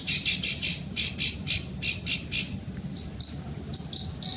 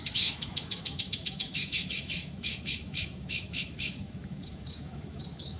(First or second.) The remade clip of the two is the second